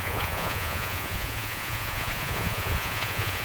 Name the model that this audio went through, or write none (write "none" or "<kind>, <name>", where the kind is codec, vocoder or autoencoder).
vocoder, Vocos